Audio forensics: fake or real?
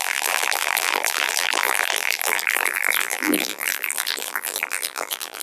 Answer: fake